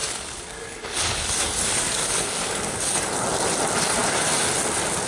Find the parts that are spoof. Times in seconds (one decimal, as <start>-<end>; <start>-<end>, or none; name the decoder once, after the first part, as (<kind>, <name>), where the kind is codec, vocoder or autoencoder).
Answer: 0.0-3.1 (codec, DAC)